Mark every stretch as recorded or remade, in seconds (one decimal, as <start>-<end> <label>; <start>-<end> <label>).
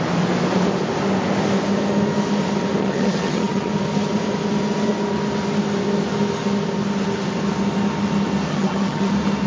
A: 0.0-2.8 recorded; 2.8-3.7 remade; 3.7-8.5 recorded; 8.5-9.1 remade; 9.1-9.5 recorded